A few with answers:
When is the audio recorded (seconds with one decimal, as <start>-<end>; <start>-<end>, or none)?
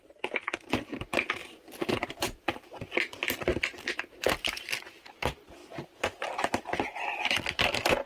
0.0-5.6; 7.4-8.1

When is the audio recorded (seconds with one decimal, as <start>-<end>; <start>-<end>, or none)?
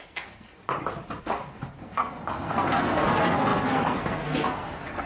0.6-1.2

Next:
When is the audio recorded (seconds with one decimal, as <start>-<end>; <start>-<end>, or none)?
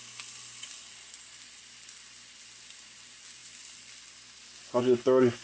0.0-5.4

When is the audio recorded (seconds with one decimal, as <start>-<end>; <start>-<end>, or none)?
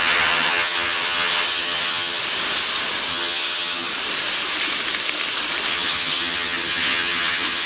2.2-3.1; 3.9-5.7